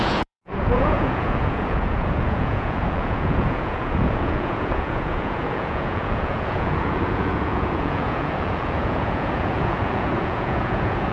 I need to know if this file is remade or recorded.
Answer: remade